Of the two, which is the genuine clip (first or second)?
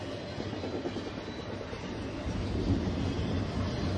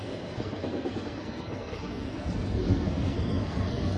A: first